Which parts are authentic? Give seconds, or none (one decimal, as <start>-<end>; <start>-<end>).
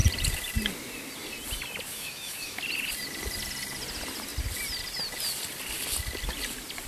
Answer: 0.0-1.9; 2.6-6.9